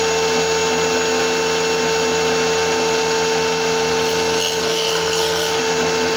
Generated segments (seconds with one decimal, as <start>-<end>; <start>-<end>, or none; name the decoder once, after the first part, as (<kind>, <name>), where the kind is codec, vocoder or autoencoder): 4.6-5.6 (codec, SNAC)